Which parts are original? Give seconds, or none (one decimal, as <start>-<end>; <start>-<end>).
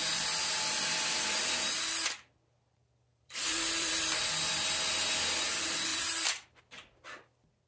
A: 1.0-3.1; 4.2-5.9; 6.6-7.7